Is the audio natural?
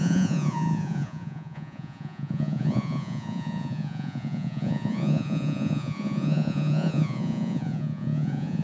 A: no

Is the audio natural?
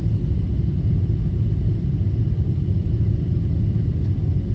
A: yes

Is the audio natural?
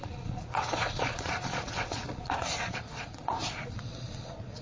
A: no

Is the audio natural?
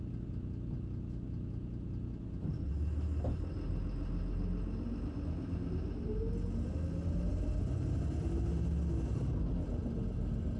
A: yes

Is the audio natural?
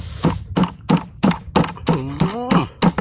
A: yes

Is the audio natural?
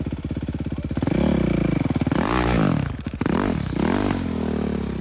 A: yes